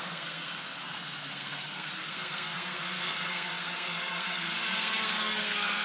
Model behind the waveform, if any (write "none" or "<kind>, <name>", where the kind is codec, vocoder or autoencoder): codec, SNAC